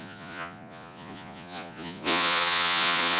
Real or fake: fake